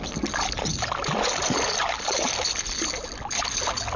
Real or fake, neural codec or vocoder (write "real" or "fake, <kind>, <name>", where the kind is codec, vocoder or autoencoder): real